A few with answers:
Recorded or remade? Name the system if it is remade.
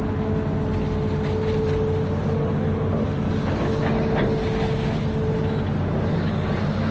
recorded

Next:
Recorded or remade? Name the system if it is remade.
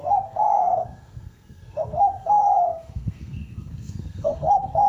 remade, codec, SNAC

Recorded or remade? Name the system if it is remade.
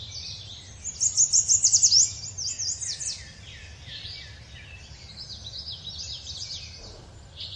recorded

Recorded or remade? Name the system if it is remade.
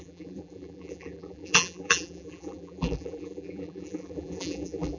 remade, vocoder, BigVGAN v2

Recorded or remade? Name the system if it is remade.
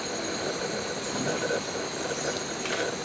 recorded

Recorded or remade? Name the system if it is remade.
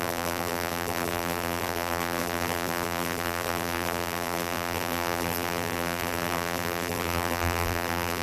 remade, vocoder, BigVGAN v2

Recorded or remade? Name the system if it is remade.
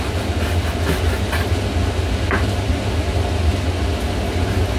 recorded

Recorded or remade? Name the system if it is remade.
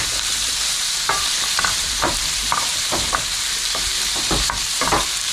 remade, vocoder, BigVGAN v2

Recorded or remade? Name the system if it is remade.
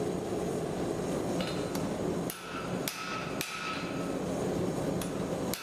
recorded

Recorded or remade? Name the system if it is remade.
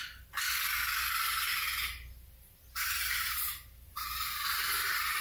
recorded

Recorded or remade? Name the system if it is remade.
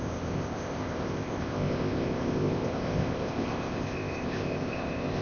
remade, codec, ZipCodec